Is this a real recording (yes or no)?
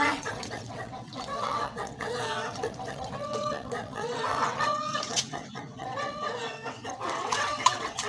no